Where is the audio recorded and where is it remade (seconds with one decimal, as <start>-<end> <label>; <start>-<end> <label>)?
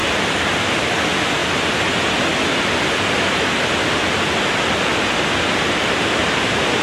0.0-0.6 remade; 0.6-6.8 recorded